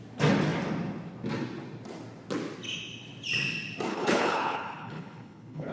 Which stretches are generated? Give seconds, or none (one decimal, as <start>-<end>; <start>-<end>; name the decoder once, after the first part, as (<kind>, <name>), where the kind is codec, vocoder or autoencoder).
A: 3.9-5.7 (codec, HILCodec)